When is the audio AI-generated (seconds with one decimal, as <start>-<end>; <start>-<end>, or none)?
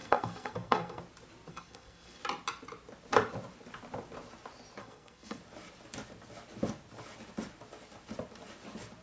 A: 0.0-1.0; 1.5-2.2; 4.8-5.4